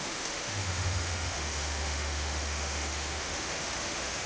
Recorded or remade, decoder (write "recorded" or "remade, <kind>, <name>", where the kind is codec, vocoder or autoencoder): remade, autoencoder, DAC-VAE